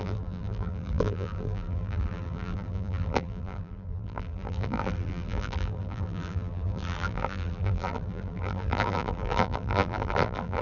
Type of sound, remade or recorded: remade